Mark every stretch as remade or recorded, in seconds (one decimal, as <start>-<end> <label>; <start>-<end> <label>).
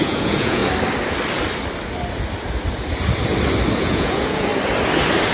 0.0-0.6 remade; 0.6-3.8 recorded; 3.8-4.5 remade; 4.5-5.3 recorded